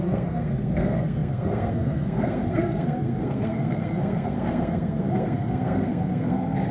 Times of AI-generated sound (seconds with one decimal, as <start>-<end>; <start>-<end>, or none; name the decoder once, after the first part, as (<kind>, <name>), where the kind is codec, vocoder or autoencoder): 0.0-6.7 (codec, SNAC)